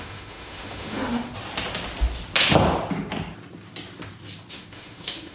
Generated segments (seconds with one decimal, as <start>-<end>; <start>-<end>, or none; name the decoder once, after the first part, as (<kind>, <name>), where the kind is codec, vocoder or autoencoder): 0.0-1.3 (autoencoder, DAC-VAE); 4.5-5.3